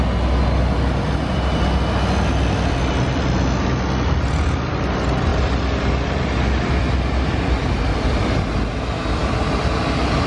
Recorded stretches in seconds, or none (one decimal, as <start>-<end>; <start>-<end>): 0.0-10.3